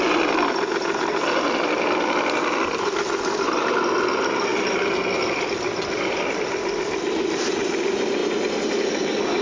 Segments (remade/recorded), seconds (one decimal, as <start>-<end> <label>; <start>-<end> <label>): 0.0-9.4 recorded